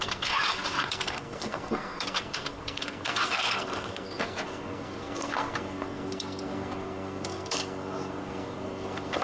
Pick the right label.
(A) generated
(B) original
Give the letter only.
A